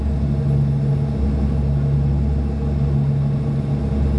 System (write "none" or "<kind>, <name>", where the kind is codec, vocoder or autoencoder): none